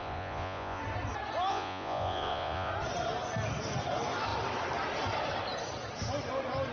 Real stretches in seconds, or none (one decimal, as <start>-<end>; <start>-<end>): 0.8-1.5; 2.7-6.7